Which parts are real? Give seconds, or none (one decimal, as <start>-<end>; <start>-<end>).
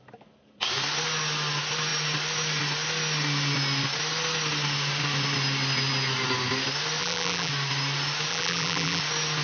0.0-7.0; 7.5-8.3; 9.0-9.4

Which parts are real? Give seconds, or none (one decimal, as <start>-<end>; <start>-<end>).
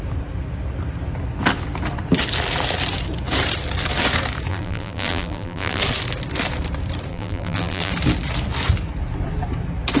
0.0-4.5; 5.8-7.1; 7.9-10.0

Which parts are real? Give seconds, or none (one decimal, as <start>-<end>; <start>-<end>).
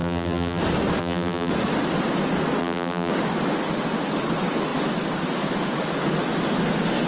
0.6-1.0; 1.5-2.6; 3.1-7.1